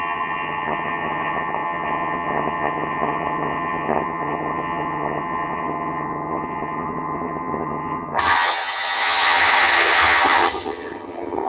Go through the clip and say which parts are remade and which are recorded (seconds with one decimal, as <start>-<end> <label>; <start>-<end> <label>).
0.0-11.5 remade

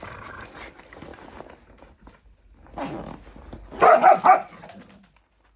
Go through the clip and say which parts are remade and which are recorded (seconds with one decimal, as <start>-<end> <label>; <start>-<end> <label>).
0.0-5.6 recorded

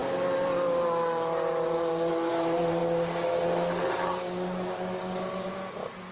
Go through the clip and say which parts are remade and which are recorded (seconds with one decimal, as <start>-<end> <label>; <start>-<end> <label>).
0.0-6.1 recorded

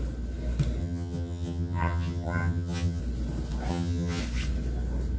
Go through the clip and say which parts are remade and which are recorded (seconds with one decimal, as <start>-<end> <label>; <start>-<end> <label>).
0.0-0.8 recorded; 0.8-3.0 remade; 3.0-3.7 recorded; 3.7-4.2 remade; 4.2-5.2 recorded